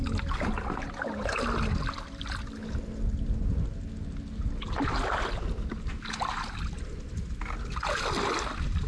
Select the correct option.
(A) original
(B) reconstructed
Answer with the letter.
A